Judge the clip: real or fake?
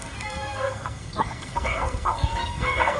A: fake